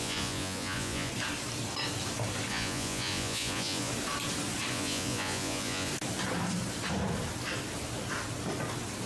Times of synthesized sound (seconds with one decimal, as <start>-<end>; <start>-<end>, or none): 0.0-1.1; 2.5-3.9; 4.7-5.9